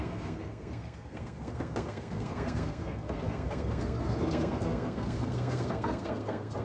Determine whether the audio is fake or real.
fake